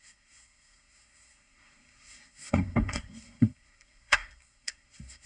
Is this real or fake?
fake